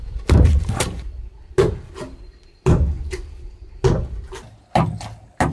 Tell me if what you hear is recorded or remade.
recorded